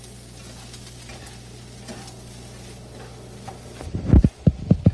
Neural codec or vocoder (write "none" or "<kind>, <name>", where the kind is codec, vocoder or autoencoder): none